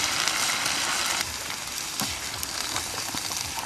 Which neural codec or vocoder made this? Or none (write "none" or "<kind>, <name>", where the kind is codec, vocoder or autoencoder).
none